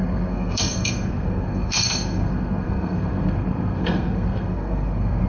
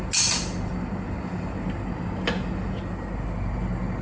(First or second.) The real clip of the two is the second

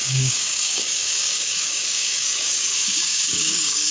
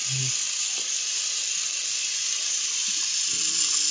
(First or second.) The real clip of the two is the second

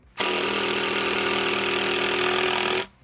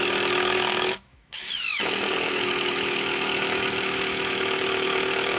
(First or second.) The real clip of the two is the first